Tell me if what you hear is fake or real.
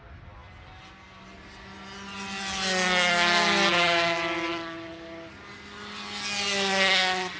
real